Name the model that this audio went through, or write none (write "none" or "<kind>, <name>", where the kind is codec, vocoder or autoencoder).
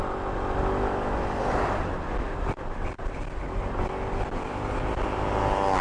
none